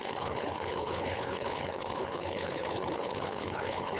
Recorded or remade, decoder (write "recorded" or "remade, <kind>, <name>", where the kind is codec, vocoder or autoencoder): remade, codec, HILCodec